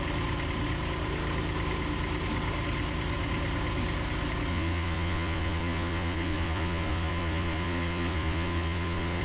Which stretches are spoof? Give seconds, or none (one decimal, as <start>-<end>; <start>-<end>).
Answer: 4.5-9.2